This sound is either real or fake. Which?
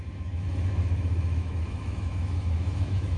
fake